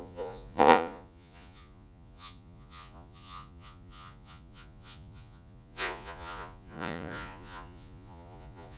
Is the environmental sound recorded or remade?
remade